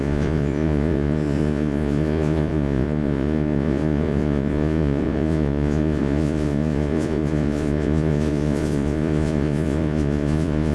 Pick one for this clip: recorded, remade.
remade